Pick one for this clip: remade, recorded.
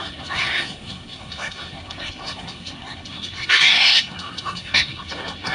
remade